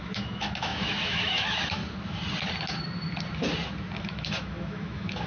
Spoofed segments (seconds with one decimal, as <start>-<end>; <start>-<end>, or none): 0.0-1.8; 4.0-5.3